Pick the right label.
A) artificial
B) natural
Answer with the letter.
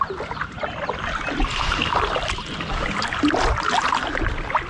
B